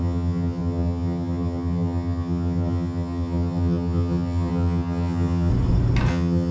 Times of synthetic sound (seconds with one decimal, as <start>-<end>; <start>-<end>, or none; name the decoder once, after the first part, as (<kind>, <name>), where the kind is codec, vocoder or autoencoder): 0.0-5.5 (vocoder, HiFi-GAN); 6.1-6.5